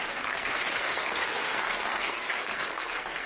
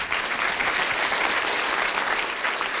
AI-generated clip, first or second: first